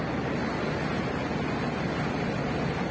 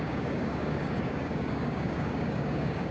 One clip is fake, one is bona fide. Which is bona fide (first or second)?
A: first